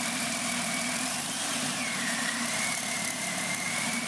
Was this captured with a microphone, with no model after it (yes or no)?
no